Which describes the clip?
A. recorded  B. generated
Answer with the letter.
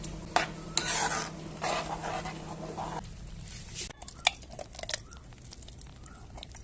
A